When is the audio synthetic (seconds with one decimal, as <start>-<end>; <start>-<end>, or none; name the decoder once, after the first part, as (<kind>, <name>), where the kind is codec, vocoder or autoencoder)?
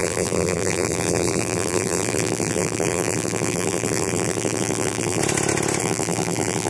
0.0-5.2 (vocoder, BigVGAN v2); 5.8-6.7